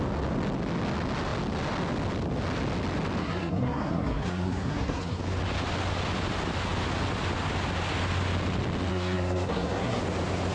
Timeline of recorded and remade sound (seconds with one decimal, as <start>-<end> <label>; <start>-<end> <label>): 0.0-3.2 recorded; 3.2-5.2 remade; 5.2-8.9 recorded; 8.9-10.0 remade; 10.0-10.5 recorded